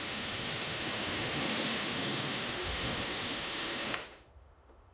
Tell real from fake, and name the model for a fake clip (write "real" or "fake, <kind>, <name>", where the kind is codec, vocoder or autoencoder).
fake, autoencoder, DAC-VAE